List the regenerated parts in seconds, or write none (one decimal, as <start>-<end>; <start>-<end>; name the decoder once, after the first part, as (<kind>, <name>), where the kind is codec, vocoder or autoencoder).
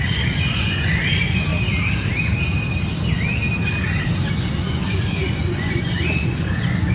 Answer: 0.0-1.5 (vocoder, Vocos); 4.7-6.9